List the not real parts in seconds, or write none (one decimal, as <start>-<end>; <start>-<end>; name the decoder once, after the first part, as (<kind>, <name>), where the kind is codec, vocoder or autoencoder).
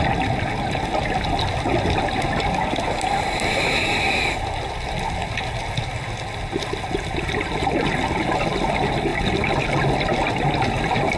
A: none